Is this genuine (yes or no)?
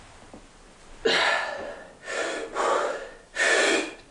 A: yes